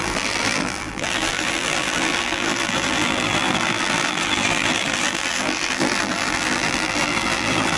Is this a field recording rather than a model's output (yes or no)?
no